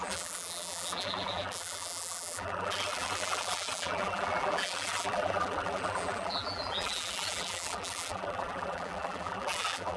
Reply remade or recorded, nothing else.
remade